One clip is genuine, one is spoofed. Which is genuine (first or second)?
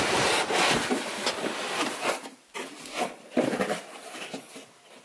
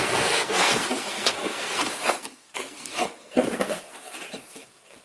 first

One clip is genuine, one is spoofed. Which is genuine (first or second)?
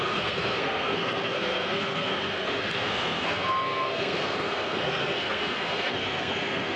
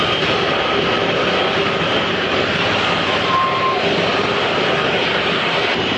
second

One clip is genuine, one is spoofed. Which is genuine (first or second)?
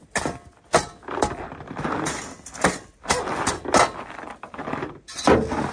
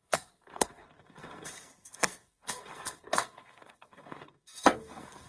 first